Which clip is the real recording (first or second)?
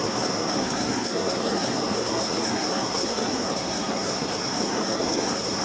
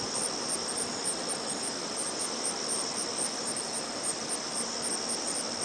second